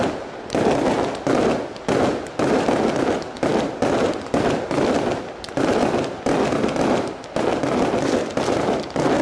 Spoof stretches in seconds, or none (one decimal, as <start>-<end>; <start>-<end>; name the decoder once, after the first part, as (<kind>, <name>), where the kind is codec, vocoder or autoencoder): none